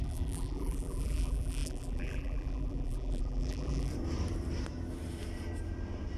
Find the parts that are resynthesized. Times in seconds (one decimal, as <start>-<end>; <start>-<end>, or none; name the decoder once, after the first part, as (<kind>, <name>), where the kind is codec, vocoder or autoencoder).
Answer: 0.0-3.9 (vocoder, BigVGAN v2)